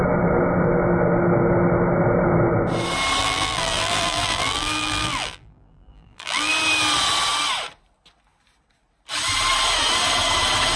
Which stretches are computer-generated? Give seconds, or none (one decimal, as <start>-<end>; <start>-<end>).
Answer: 3.2-6.5